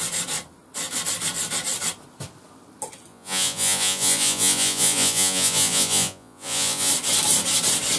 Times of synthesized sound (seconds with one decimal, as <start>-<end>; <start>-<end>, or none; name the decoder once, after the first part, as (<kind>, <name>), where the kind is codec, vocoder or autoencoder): 3.1-6.9 (vocoder, Vocos)